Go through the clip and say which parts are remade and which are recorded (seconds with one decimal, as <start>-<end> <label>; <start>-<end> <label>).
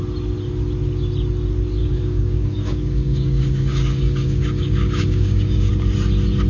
0.0-1.8 recorded; 1.8-5.7 remade; 5.7-6.5 recorded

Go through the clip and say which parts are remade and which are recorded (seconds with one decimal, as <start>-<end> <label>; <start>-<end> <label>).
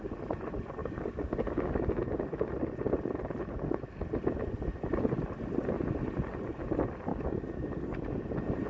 0.0-0.8 recorded; 0.8-1.8 remade; 1.8-7.1 recorded; 7.1-8.0 remade; 8.0-8.7 recorded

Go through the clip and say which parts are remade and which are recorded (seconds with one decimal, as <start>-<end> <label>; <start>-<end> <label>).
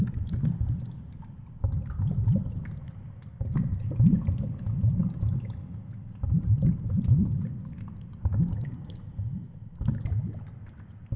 0.0-8.3 recorded; 8.3-9.0 remade; 9.0-11.2 recorded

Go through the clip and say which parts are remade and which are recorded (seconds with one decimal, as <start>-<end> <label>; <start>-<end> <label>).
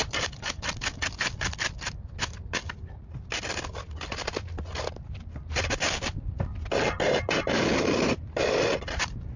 0.0-9.4 recorded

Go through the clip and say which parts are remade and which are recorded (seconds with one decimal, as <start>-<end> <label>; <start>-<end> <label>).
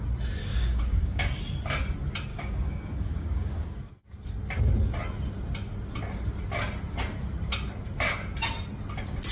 0.0-0.4 recorded; 0.4-1.4 remade; 1.4-2.3 recorded; 2.3-3.9 remade; 3.9-9.3 recorded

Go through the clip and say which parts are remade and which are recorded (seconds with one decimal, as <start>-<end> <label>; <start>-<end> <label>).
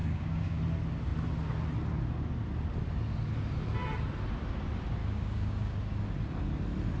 0.0-0.6 remade; 0.6-5.0 recorded; 5.0-5.8 remade; 5.8-7.0 recorded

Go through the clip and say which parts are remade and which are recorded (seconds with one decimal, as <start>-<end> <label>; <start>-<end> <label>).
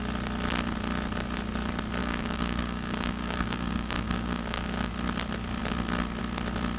0.0-2.0 recorded; 2.0-4.9 remade; 4.9-6.8 recorded